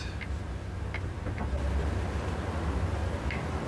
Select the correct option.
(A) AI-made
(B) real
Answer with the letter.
B